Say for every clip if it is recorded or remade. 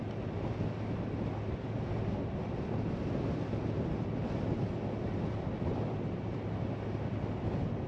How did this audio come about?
recorded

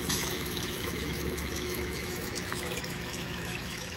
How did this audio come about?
remade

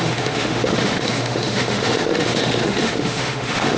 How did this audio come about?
remade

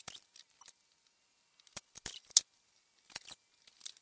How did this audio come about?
recorded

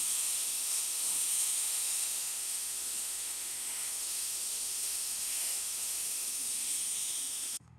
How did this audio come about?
remade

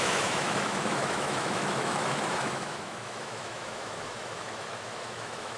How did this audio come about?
remade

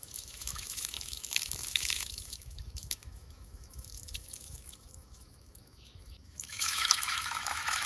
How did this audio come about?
remade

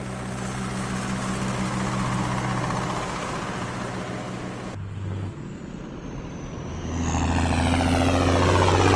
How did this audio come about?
recorded